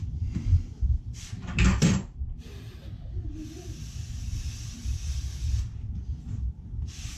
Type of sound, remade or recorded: remade